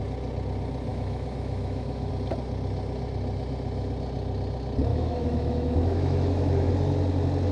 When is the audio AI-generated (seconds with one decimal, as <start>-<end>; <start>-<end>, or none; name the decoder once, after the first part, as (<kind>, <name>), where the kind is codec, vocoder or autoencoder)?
0.9-2.1 (autoencoder, DAC-VAE); 4.9-6.7